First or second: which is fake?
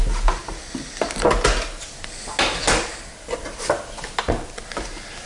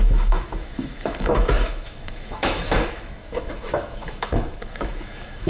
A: second